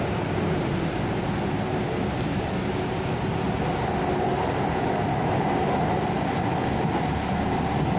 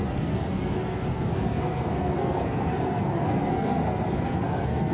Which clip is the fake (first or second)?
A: second